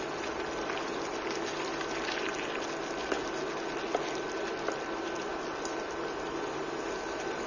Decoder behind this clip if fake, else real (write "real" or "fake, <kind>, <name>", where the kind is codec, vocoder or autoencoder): real